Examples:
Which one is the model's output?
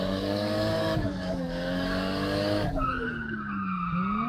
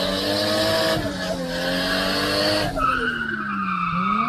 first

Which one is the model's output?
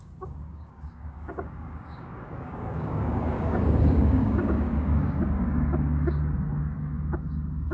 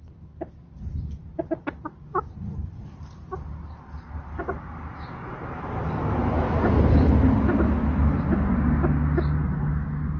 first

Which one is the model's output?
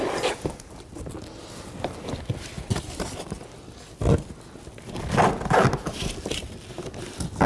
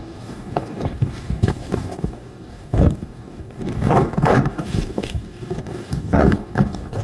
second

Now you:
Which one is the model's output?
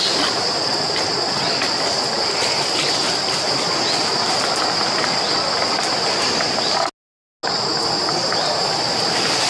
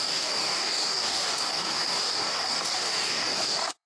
second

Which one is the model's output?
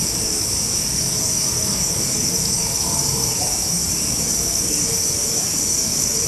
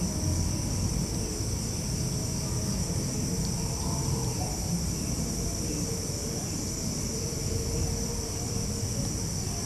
first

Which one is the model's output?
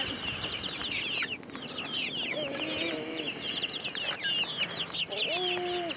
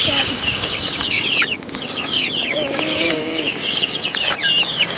second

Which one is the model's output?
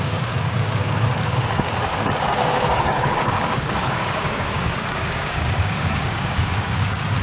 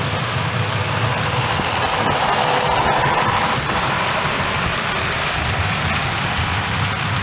first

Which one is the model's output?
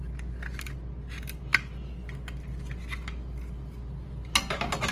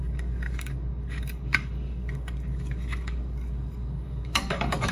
second